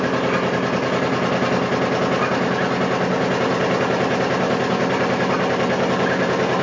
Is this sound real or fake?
real